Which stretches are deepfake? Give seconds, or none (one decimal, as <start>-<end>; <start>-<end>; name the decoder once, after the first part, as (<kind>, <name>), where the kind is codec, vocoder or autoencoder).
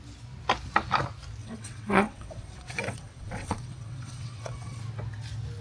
1.4-4.8 (vocoder, WaveNeXt)